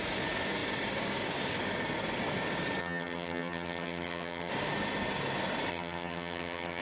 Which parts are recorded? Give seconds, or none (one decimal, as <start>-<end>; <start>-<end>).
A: 0.0-2.8; 4.5-5.7